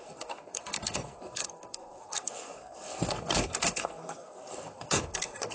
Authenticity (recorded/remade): remade